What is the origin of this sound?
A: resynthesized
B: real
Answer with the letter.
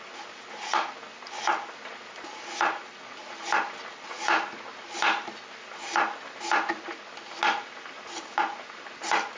B